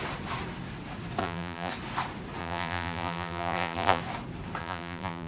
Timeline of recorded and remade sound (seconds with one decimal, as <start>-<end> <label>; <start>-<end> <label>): 0.0-1.2 recorded; 1.2-1.7 remade; 1.7-2.4 recorded; 2.4-4.0 remade; 4.0-4.6 recorded; 4.6-5.3 remade